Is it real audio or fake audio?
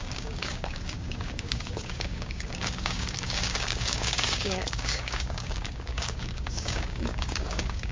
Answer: fake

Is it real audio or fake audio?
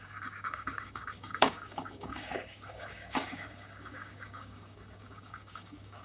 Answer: fake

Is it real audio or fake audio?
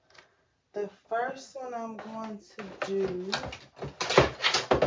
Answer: real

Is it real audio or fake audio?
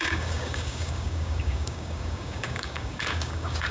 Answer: fake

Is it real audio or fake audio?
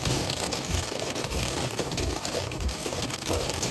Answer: fake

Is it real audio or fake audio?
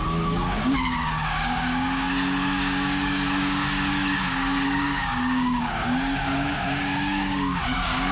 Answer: fake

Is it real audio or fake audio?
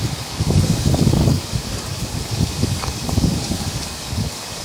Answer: fake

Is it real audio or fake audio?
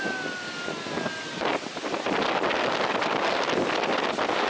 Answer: real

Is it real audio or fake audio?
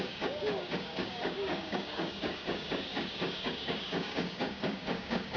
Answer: fake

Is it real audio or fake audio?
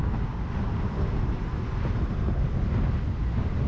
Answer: real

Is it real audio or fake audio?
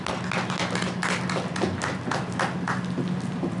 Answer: real